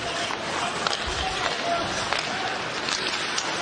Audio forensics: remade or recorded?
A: recorded